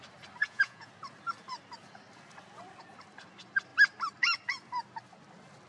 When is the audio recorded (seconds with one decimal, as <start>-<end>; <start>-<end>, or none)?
0.0-0.4; 0.9-5.7